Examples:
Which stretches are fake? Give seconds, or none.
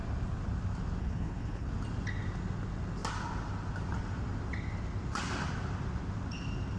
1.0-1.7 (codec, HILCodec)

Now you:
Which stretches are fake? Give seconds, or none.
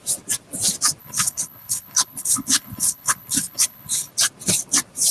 1.0-4.1 (codec, HILCodec)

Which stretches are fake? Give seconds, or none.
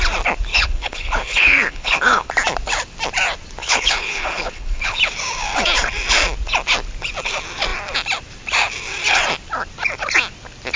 0.5-2.3 (codec, HILCodec); 3.6-5.0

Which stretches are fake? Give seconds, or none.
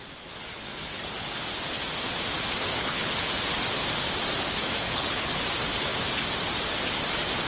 0.4-1.3 (codec, HILCodec); 2.7-3.3; 4.8-5.4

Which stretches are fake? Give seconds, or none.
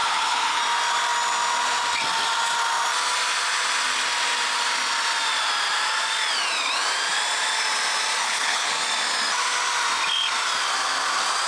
0.0-0.6 (codec, HILCodec); 8.2-8.7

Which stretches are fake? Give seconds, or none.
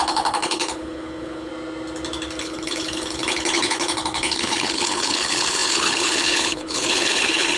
0.0-1.5 (codec, HILCodec); 2.4-7.6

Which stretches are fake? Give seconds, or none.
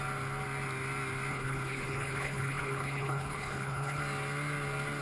1.3-4.0 (codec, HILCodec)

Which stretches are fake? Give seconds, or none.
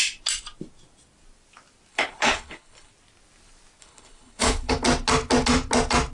1.9-2.9 (codec, HILCodec); 3.8-4.7